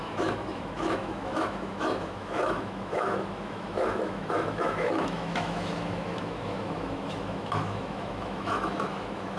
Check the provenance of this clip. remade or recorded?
remade